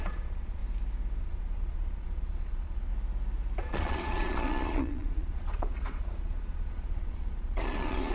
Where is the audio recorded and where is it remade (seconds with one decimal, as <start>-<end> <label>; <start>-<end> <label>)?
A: 0.0-0.6 remade; 0.6-1.2 recorded; 1.2-2.9 remade; 2.9-3.6 recorded; 3.6-8.1 remade